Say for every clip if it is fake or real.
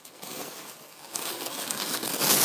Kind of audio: fake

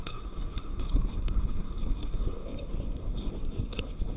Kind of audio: fake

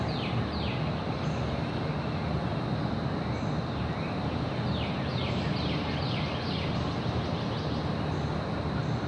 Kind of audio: real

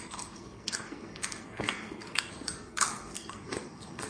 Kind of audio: fake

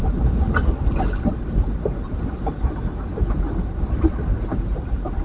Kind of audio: real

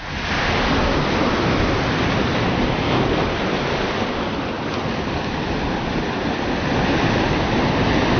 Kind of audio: real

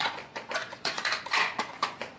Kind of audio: fake